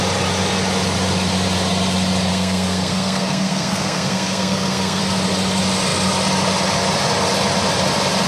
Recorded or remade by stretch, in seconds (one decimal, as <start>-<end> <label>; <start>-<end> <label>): 0.0-2.3 recorded; 2.3-5.0 remade; 5.0-8.3 recorded

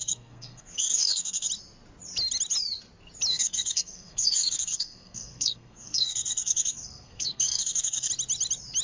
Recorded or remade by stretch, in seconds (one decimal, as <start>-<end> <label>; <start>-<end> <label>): 0.0-1.5 remade; 1.5-3.3 recorded; 3.3-8.1 remade; 8.1-8.8 recorded

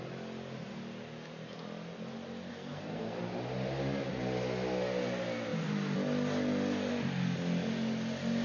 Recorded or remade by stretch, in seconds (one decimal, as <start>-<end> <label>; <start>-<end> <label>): 0.0-2.5 recorded; 2.5-3.2 remade; 3.2-8.4 recorded

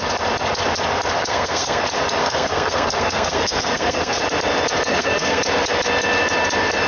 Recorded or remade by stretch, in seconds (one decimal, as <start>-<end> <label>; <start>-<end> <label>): 0.0-1.2 recorded; 1.2-1.8 remade; 1.8-2.2 recorded; 2.2-4.2 remade; 4.2-4.9 recorded; 4.9-5.4 remade; 5.4-6.9 recorded